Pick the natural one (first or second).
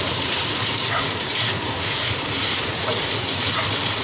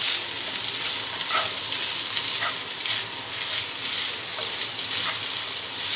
second